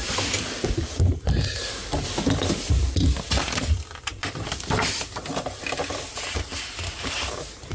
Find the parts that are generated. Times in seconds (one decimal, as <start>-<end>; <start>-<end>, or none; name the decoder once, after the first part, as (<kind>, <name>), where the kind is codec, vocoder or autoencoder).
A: none